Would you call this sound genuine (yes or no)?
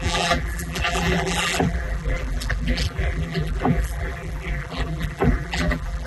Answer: no